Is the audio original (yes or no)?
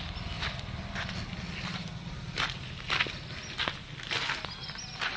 yes